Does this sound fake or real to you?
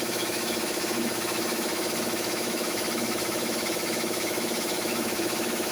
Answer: fake